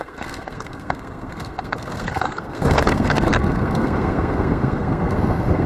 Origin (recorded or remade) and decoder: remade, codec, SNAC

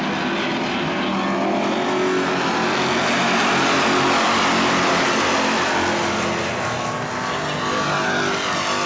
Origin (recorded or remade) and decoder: recorded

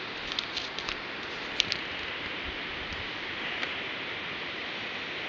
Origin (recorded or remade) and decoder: recorded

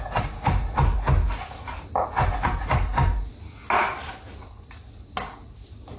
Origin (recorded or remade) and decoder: recorded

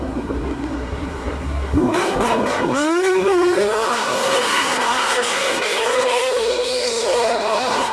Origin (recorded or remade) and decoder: remade, codec, SNAC